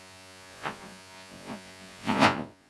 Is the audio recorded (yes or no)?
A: no